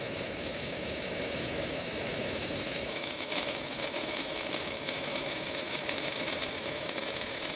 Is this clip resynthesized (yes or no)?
yes